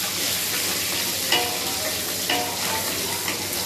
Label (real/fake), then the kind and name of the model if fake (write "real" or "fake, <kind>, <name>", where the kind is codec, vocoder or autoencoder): real